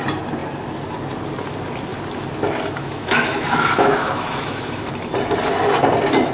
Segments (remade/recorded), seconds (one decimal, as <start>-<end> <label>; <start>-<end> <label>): 0.0-2.8 recorded; 2.8-4.9 remade; 4.9-6.3 recorded